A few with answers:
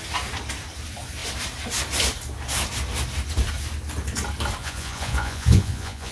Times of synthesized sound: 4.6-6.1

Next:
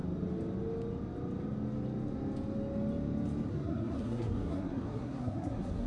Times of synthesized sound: 3.5-5.9